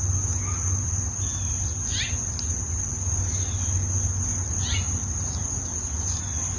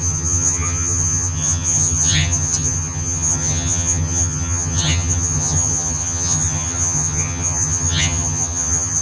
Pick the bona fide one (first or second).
first